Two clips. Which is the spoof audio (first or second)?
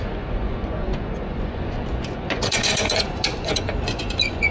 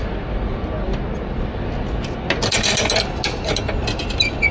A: first